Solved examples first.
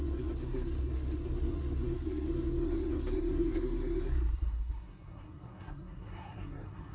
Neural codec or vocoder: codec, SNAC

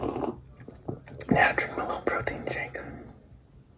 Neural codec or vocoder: none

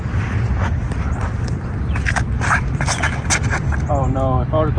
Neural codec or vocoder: vocoder, BigVGAN v2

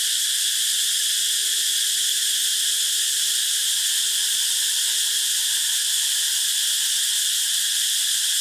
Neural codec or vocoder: vocoder, BigVGAN v2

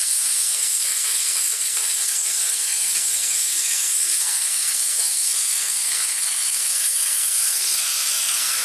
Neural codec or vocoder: codec, SNAC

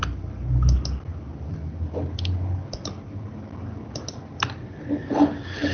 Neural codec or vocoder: none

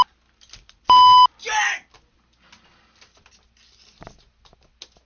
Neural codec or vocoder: none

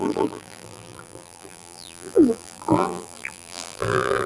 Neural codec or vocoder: vocoder, BigVGAN v2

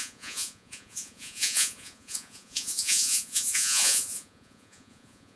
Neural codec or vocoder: vocoder, Vocos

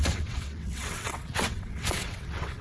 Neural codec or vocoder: vocoder, WaveNeXt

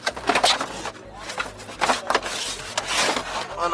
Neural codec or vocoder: none